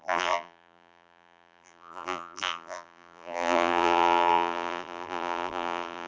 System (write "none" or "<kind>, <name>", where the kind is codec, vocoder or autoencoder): vocoder, BigVGAN v2